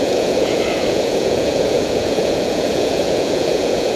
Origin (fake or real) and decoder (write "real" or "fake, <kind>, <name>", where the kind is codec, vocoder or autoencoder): fake, vocoder, Vocos